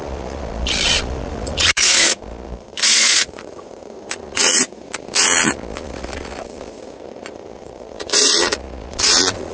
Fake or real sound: fake